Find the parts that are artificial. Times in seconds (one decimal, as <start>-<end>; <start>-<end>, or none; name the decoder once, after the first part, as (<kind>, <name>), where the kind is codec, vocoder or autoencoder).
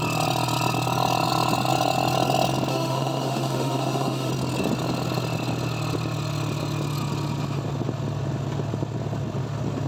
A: 2.7-4.3 (autoencoder, DAC-VAE)